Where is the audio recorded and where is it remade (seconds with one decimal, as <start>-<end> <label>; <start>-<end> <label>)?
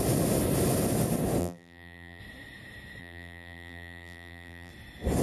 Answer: 0.0-1.4 recorded; 1.4-2.2 remade; 2.2-3.0 recorded; 3.0-4.7 remade; 4.7-5.2 recorded